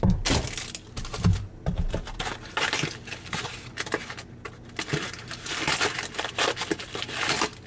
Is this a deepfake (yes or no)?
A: no